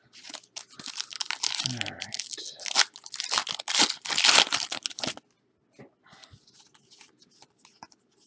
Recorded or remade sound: recorded